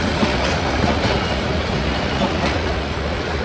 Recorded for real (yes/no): no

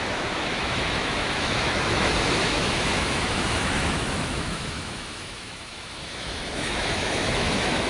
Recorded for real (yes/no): no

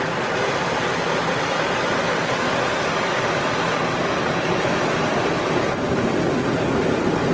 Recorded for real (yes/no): yes